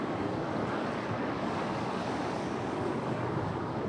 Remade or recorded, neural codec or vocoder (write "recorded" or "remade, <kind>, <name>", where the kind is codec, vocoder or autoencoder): remade, codec, DAC